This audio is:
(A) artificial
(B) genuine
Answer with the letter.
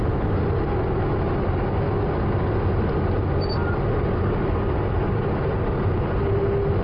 B